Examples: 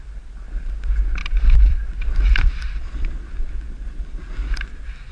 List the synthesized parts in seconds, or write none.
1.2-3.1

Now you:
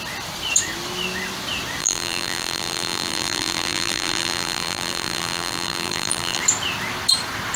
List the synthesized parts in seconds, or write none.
1.8-6.4